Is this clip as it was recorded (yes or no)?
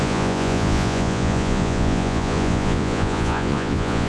no